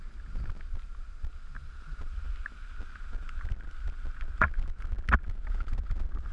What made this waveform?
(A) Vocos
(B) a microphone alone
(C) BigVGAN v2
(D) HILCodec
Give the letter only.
B